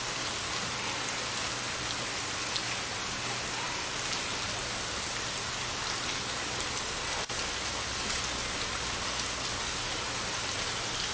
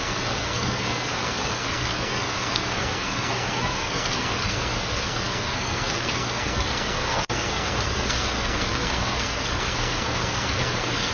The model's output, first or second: second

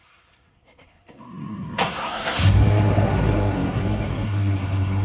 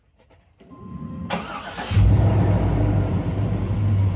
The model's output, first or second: first